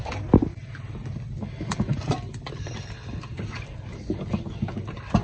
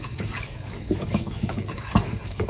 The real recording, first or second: first